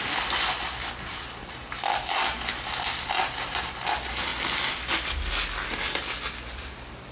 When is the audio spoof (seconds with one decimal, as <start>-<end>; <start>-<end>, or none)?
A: none